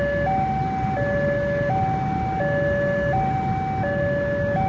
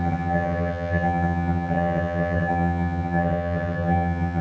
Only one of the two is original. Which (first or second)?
first